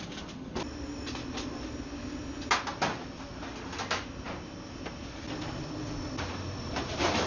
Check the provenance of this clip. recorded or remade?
recorded